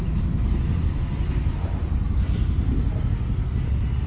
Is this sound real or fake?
real